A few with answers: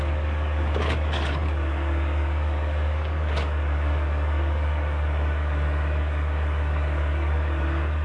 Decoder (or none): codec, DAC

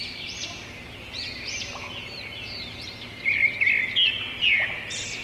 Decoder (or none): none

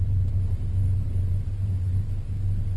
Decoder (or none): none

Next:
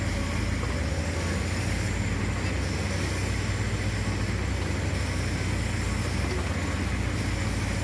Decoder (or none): none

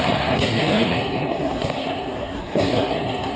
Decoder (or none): codec, SNAC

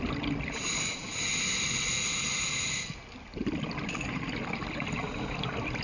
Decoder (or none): none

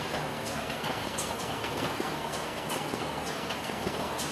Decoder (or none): codec, SNAC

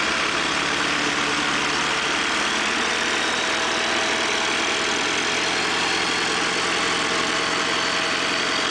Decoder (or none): none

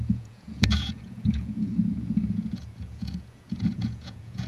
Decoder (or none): vocoder, Vocos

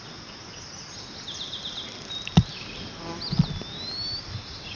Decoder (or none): none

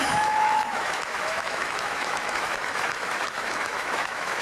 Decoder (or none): autoencoder, DAC-VAE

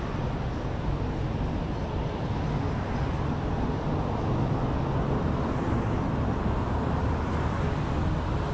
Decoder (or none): none